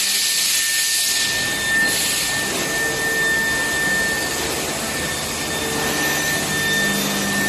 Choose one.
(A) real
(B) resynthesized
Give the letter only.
A